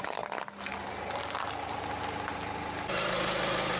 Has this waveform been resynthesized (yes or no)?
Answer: no